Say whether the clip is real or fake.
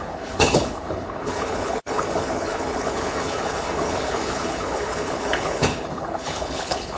fake